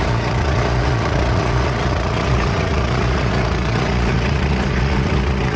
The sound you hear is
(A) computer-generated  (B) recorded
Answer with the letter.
A